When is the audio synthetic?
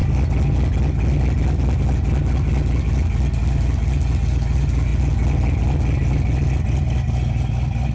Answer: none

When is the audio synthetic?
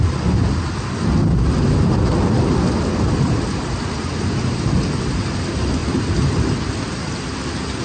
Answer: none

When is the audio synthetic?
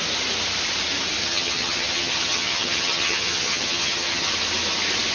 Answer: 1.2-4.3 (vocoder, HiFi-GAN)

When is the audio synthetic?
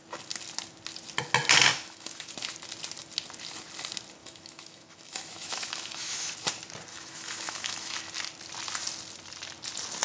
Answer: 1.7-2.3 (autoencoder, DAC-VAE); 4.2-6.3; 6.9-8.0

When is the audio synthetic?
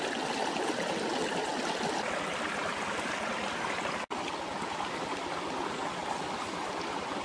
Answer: none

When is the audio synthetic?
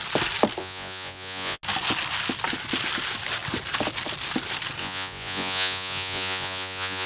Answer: 0.6-1.6 (vocoder, Vocos); 4.8-7.1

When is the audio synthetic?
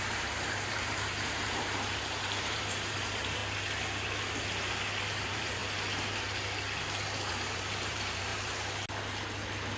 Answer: 0.0-3.4 (vocoder, BigVGAN v2); 5.1-5.6; 7.3-8.3